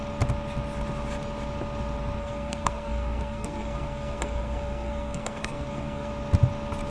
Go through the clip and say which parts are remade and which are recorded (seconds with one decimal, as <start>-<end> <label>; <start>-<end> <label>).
0.0-2.2 recorded; 2.2-6.1 remade; 6.1-6.9 recorded